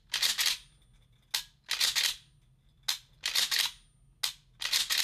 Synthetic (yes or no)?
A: no